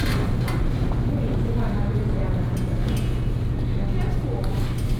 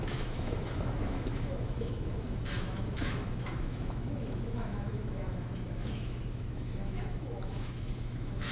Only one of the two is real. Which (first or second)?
first